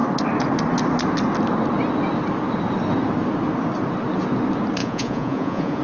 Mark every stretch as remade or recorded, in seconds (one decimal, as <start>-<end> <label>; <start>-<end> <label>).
0.0-4.8 recorded; 4.8-5.8 remade